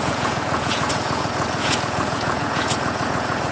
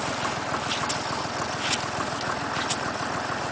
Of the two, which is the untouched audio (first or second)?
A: second